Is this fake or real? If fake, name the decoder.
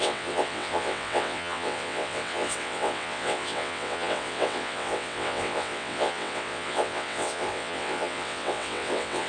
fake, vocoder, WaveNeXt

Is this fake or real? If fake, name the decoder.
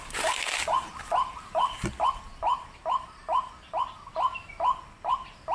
real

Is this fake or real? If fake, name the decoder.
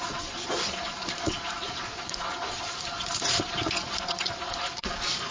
fake, vocoder, Vocos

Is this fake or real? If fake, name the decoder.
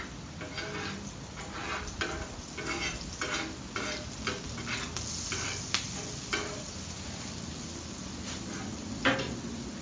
real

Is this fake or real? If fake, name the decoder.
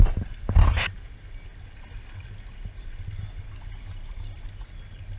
real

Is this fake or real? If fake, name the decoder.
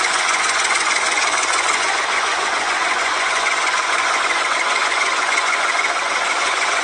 fake, vocoder, Vocos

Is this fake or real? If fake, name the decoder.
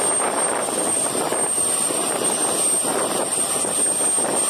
real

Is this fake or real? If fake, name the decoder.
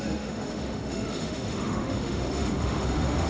fake, autoencoder, DAC-VAE